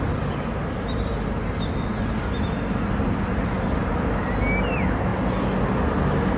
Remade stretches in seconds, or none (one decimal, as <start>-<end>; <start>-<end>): none